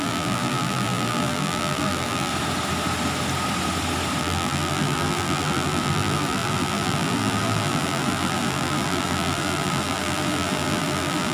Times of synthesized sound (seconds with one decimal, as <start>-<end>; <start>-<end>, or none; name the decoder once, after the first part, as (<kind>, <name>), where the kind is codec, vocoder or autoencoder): 0.0-2.3 (vocoder, BigVGAN v2); 4.2-11.3